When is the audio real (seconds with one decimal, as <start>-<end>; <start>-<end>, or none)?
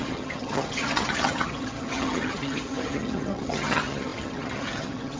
none